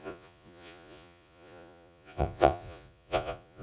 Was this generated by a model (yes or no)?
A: yes